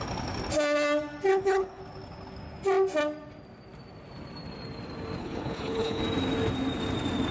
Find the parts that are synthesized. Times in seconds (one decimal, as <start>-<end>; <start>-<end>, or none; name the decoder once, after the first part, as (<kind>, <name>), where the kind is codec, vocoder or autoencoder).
1.3-1.8 (codec, HILCodec); 5.2-6.0